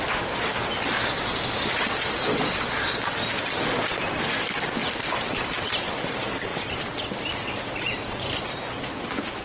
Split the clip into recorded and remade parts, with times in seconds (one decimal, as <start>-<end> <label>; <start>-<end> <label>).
0.0-4.8 recorded; 4.8-6.1 remade; 6.1-6.5 recorded; 6.5-7.2 remade; 7.2-9.4 recorded